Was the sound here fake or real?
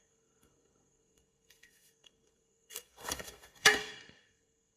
fake